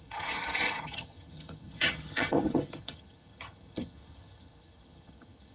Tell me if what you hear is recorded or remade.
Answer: remade